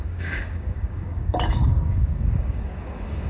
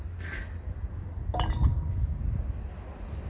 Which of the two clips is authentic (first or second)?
second